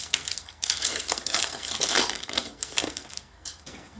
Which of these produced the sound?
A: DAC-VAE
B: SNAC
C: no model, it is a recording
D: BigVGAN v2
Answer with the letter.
B